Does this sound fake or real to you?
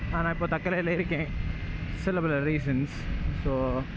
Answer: real